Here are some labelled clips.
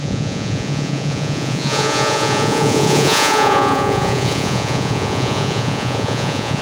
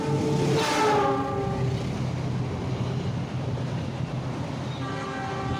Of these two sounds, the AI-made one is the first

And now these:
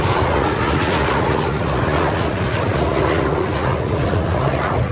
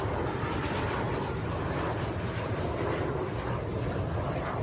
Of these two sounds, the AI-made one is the first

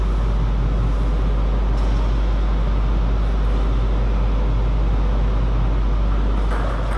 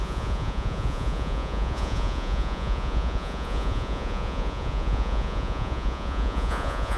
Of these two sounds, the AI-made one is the second